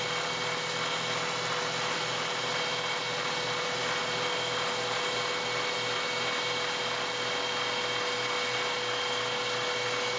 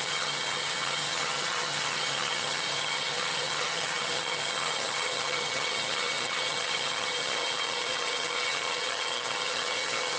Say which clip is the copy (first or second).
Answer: second